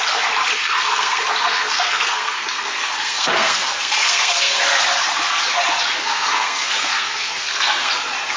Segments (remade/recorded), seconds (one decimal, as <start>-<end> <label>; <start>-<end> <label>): 0.0-0.5 recorded; 0.5-4.6 remade; 4.6-6.0 recorded; 6.0-7.9 remade; 7.9-8.4 recorded